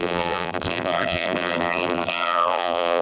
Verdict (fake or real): fake